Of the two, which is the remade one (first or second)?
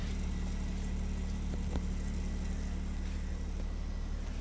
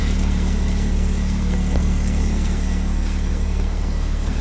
second